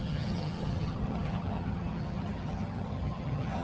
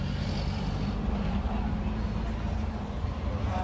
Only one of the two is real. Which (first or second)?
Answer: second